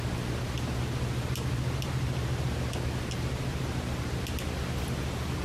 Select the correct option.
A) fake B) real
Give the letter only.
B